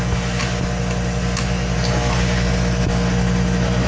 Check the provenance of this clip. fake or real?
real